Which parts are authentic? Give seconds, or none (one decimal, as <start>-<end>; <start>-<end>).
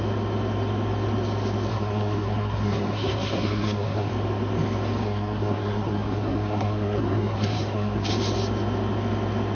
0.0-1.7; 4.1-5.0; 8.1-9.5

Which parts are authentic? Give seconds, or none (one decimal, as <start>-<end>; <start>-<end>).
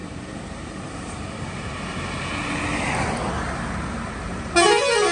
1.1-2.7; 3.3-5.1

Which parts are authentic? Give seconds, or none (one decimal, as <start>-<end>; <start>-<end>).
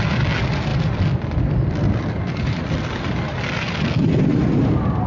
0.0-0.7; 3.8-5.1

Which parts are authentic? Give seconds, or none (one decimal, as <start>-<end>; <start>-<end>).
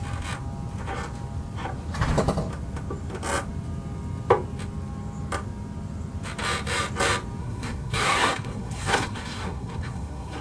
0.0-7.4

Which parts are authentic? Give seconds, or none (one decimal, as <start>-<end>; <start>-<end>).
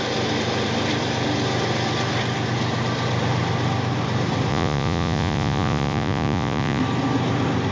0.0-4.5; 6.8-7.7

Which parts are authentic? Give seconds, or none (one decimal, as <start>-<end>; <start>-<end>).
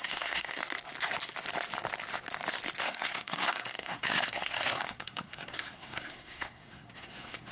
0.6-2.8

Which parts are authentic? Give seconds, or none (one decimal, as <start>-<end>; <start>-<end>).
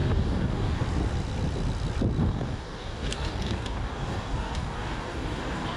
0.8-2.2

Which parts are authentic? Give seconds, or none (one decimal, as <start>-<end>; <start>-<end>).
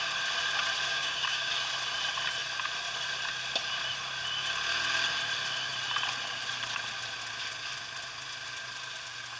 0.0-0.9; 1.5-9.4